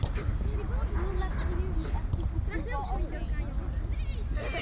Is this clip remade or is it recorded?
recorded